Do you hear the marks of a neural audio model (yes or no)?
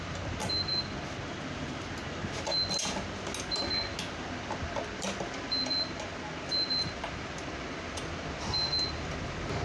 no